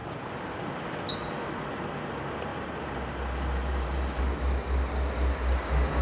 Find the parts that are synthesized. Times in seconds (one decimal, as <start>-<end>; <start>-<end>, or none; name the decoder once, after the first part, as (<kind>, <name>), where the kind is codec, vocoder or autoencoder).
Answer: none